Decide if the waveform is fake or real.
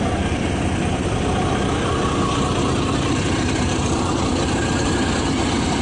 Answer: fake